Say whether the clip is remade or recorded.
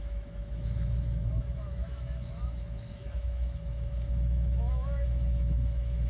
remade